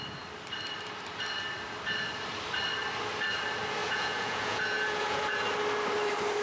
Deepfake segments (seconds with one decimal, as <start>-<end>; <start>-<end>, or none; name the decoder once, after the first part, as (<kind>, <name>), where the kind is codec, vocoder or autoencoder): 3.8-5.4 (vocoder, Vocos)